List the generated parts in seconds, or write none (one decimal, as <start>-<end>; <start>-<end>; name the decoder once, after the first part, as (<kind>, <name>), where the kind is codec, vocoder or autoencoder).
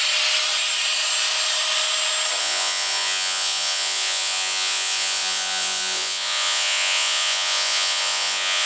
2.4-8.7 (vocoder, Vocos)